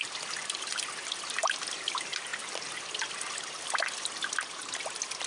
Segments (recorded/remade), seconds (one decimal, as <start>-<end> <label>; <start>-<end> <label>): 0.0-5.3 recorded